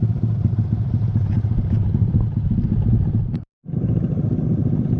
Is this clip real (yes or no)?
no